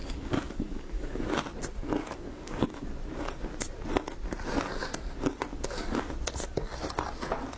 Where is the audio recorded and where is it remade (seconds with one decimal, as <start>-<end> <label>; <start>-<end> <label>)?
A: 0.0-1.2 remade; 1.2-2.0 recorded; 2.0-2.9 remade; 2.9-5.5 recorded; 5.5-6.1 remade; 6.1-7.6 recorded